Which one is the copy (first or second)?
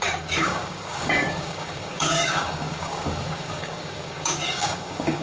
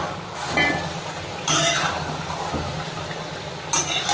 first